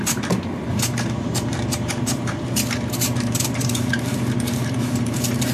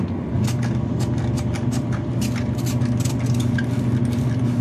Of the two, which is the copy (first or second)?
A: first